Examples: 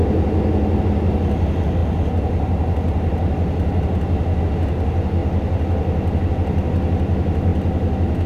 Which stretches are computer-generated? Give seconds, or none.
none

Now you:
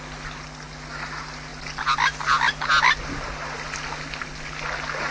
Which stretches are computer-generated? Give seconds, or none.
none

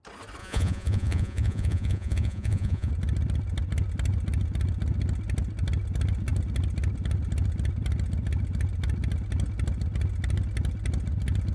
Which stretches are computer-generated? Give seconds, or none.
0.4-2.9 (vocoder, Vocos)